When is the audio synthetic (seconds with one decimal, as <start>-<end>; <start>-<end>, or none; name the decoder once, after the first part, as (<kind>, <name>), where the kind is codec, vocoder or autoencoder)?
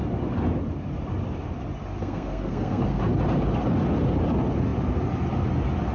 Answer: 2.0-3.0 (codec, SNAC)